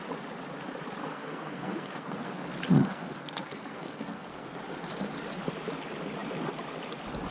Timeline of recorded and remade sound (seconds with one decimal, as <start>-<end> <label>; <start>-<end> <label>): 0.0-1.0 recorded; 1.0-2.4 remade; 2.4-2.8 recorded; 2.8-4.6 remade; 4.6-7.3 recorded